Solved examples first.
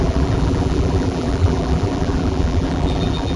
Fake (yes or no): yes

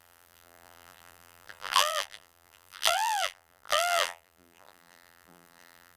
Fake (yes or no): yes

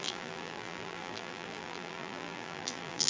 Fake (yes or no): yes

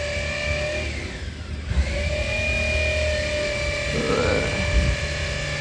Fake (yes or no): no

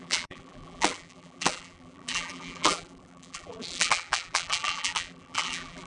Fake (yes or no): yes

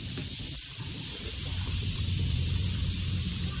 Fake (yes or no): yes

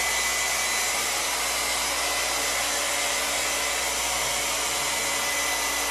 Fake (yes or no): no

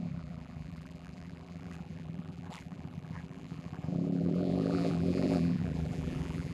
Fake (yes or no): yes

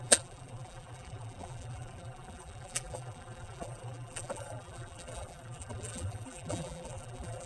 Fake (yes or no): yes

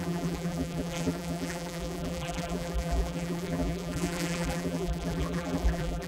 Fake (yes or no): yes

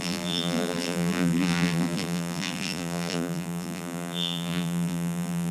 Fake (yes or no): yes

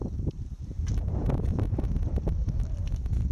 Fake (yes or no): no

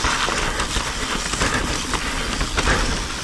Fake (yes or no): no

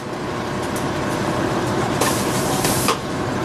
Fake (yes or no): yes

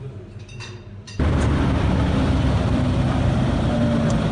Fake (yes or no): yes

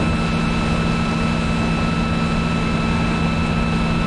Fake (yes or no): no